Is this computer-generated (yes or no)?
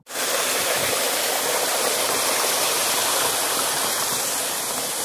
no